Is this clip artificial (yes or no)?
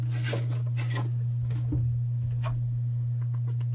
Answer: no